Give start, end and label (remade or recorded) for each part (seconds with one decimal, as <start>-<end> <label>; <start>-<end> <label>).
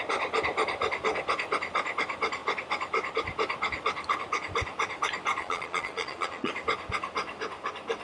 0.0-5.4 recorded; 5.4-6.5 remade; 6.5-8.0 recorded